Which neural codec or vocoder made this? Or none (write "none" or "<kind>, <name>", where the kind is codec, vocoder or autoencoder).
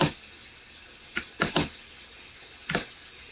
none